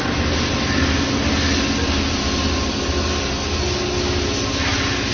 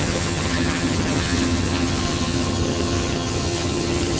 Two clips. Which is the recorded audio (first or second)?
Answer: first